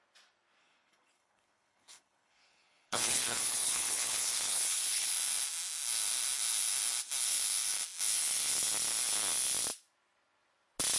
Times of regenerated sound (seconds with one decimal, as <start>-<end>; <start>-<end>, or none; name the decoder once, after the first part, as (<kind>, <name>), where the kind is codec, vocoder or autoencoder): 0.6-5.1 (codec, HILCodec)